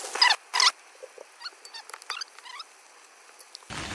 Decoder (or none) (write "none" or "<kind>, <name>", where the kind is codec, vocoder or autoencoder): none